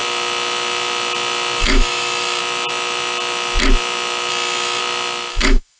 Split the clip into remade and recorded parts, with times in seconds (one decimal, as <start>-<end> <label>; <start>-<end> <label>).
0.0-1.6 recorded; 1.6-2.4 remade; 2.4-4.3 recorded; 4.3-4.8 remade; 4.8-5.3 recorded; 5.3-5.8 remade